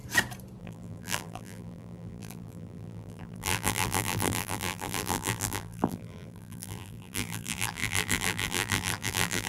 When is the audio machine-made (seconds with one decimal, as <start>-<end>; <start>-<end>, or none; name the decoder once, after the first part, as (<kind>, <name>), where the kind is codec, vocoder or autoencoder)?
0.6-9.5 (vocoder, BigVGAN v2)